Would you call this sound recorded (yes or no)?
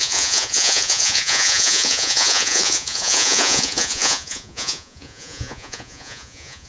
no